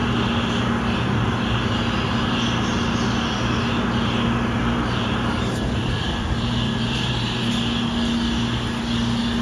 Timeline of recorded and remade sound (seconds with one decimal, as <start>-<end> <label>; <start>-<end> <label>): 0.0-4.6 recorded; 4.6-7.5 remade; 7.5-9.4 recorded